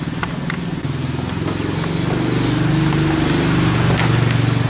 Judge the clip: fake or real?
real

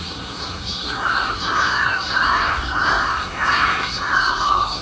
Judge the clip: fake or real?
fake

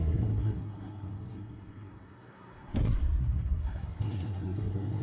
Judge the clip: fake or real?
fake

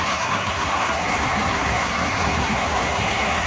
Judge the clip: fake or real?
fake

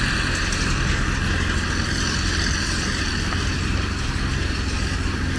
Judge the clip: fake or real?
real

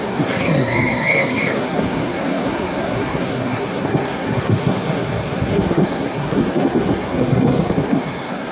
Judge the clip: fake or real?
fake